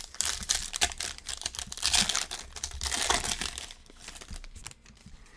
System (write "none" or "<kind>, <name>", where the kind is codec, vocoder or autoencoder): none